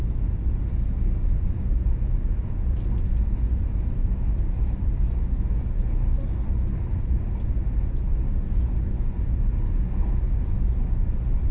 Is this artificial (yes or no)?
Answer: no